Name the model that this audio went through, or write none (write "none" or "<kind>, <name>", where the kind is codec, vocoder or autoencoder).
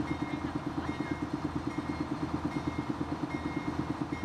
none